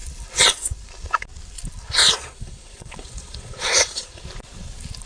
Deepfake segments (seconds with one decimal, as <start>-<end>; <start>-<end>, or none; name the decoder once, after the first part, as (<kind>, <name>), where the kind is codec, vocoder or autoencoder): 2.0-4.2 (vocoder, Vocos)